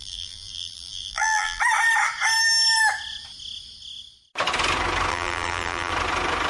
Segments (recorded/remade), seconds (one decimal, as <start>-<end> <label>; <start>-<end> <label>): 0.0-1.6 remade; 1.6-5.1 recorded; 5.1-5.9 remade; 5.9-6.5 recorded